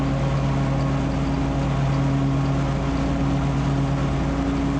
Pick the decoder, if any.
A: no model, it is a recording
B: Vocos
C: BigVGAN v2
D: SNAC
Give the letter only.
A